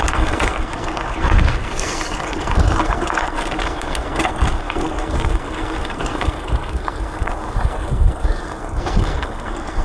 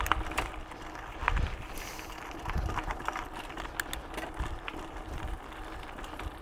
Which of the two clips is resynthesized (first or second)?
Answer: first